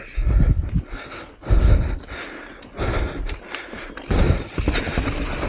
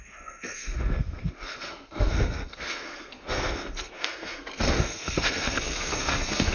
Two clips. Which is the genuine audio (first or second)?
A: first